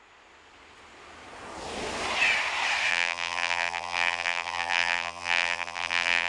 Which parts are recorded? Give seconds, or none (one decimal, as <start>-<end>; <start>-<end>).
0.0-2.9